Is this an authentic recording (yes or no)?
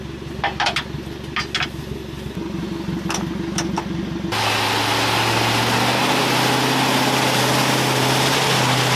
yes